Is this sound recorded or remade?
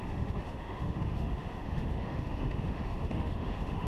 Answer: remade